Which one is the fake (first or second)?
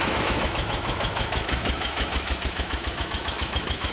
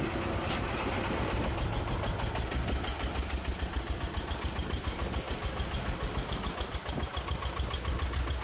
first